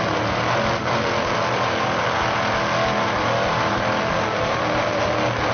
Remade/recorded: recorded